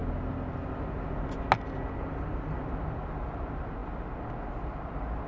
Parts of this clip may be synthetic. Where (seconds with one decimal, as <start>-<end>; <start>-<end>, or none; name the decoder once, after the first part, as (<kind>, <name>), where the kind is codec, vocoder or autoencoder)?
none